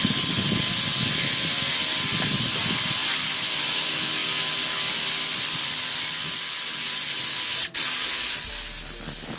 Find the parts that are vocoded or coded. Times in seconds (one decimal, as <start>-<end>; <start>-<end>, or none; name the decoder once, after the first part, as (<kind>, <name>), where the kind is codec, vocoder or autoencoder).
none